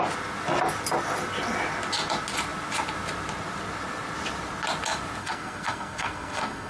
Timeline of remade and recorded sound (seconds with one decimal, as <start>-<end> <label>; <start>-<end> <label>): 0.0-5.2 recorded; 5.2-6.7 remade